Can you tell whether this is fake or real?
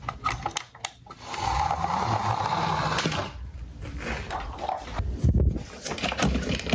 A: real